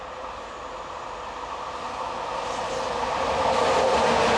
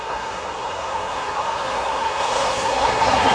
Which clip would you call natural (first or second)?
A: first